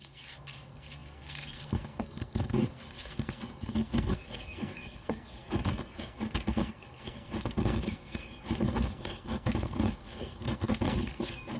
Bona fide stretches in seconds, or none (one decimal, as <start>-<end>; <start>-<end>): none